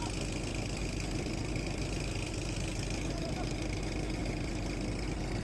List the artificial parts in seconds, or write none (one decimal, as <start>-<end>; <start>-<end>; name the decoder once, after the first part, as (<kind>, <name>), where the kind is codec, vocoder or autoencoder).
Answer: 0.8-3.8 (vocoder, BigVGAN v2)